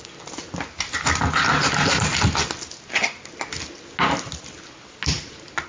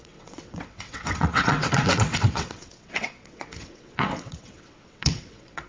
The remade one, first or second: second